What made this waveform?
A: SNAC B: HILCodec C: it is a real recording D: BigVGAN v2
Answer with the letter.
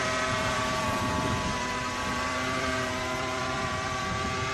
D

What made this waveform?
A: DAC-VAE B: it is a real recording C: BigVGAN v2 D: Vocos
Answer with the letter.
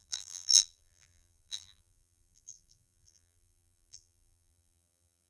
C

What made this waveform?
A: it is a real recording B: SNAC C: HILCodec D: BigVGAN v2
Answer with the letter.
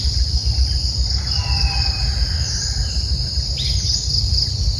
A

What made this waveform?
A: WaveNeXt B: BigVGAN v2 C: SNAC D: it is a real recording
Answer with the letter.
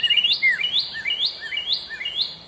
D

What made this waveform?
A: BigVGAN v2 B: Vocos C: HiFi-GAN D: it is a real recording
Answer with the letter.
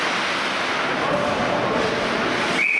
D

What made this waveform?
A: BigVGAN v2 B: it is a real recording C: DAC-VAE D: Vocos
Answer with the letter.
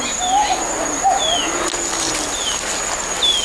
B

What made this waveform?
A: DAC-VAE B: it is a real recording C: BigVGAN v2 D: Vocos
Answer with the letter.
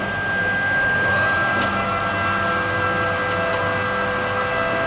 B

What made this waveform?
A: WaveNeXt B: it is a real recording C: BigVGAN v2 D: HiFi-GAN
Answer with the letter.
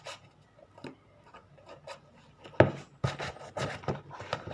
B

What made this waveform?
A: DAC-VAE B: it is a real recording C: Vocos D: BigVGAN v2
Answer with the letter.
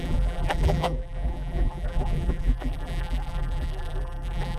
D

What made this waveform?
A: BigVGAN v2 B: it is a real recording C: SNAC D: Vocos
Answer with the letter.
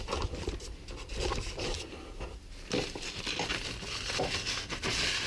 A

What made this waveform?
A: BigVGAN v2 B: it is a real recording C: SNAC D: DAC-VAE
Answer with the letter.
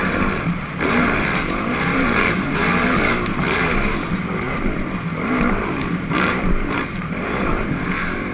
A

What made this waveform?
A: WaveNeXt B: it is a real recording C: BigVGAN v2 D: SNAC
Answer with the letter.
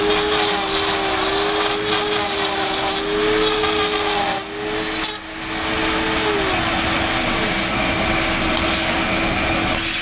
B